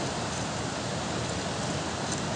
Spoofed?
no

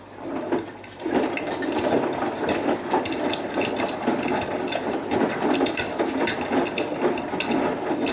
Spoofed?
no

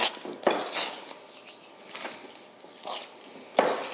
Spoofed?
no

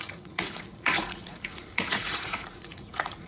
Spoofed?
yes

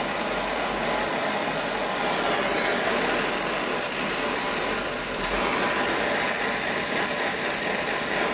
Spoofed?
no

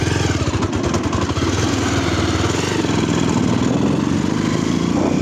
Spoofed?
no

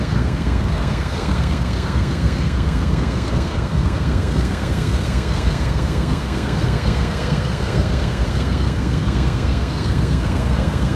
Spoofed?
yes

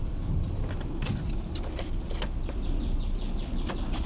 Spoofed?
no